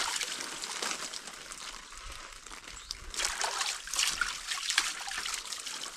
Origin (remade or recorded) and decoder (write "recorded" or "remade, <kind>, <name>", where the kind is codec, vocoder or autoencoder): recorded